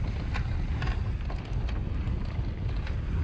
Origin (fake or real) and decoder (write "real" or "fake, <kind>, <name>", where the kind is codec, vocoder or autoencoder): real